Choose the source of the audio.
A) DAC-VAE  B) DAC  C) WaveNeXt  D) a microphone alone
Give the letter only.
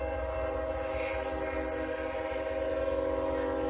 D